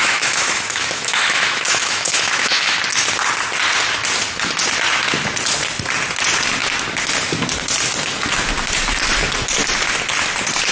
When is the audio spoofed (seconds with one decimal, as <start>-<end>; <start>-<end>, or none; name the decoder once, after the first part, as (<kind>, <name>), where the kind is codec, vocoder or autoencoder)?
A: 0.0-2.7 (autoencoder, DAC-VAE)